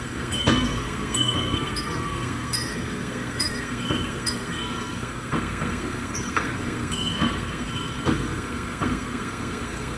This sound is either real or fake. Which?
fake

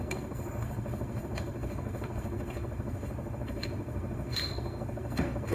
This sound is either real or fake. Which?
fake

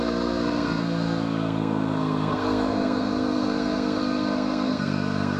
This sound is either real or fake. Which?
fake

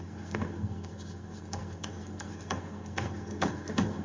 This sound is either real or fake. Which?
fake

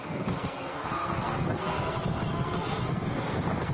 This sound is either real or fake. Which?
fake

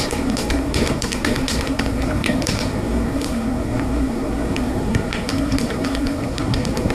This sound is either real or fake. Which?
fake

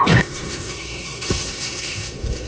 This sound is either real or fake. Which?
fake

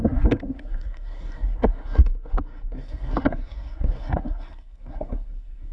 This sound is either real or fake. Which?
fake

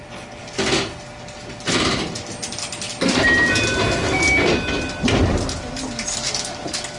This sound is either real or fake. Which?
real